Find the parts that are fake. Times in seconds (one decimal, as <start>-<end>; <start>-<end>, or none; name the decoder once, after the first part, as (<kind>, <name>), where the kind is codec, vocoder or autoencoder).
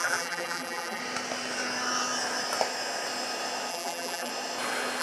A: 0.0-1.0 (vocoder, BigVGAN v2); 3.7-4.3